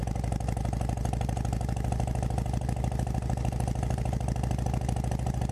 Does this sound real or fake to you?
real